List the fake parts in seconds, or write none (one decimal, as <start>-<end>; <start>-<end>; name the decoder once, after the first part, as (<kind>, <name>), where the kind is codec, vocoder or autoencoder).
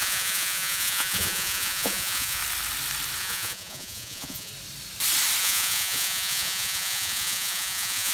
0.0-2.4 (vocoder, Vocos); 3.2-4.5; 5.4-8.1